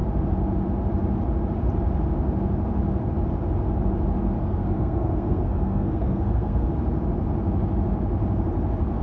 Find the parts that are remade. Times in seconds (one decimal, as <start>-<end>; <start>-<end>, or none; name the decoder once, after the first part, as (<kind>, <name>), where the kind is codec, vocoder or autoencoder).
4.4-6.7 (codec, SNAC)